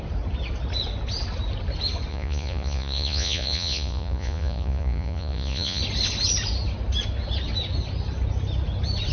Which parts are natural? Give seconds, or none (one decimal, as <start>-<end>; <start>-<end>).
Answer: 0.0-2.1; 5.8-9.1